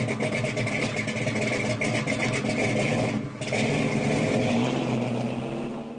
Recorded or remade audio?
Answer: recorded